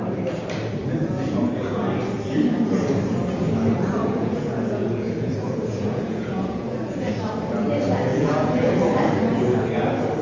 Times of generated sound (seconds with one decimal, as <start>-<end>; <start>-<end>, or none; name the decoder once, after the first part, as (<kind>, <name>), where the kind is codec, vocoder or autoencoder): 0.8-1.8 (vocoder, Vocos); 4.0-7.1; 8.1-8.7